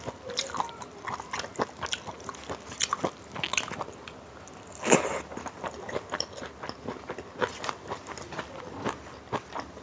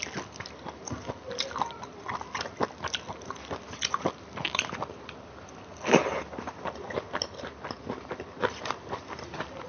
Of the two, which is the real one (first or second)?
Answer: first